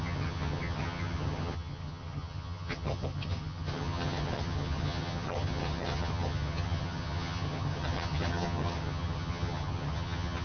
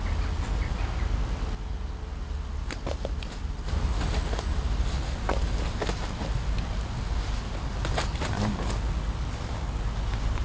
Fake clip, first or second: first